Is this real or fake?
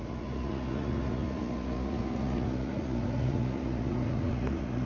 fake